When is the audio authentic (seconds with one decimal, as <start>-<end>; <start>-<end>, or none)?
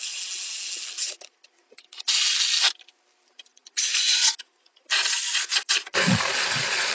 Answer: 0.0-1.0; 2.1-3.5